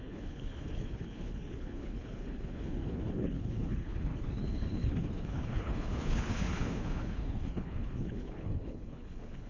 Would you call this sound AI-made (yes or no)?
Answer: yes